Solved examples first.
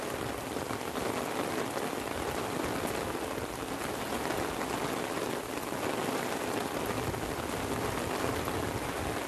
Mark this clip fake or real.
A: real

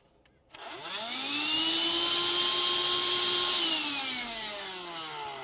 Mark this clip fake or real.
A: real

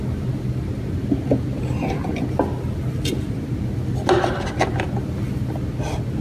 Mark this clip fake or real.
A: real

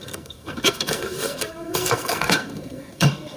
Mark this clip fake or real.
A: fake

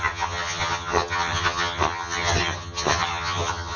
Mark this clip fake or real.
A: fake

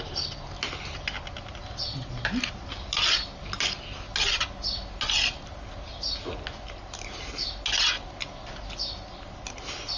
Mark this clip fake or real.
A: real